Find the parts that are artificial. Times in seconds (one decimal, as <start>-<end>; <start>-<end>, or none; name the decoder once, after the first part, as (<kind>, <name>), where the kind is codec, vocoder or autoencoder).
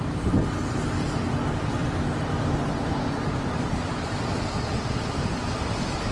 none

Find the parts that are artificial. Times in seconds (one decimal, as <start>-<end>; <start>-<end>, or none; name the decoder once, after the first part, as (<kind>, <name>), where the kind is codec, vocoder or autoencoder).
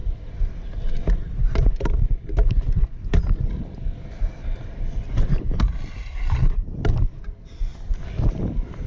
none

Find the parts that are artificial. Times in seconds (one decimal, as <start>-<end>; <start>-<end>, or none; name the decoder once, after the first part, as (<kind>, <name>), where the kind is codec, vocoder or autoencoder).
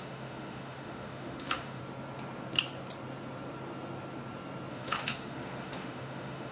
0.0-1.8 (autoencoder, DAC-VAE); 4.7-6.5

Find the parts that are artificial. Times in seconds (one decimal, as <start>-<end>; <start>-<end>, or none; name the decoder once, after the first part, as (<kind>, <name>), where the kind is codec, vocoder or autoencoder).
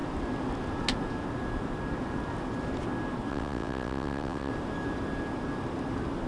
3.3-4.5 (vocoder, WaveNeXt)